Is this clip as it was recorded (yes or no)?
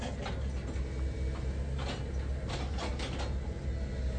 yes